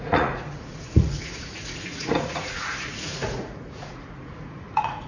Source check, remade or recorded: remade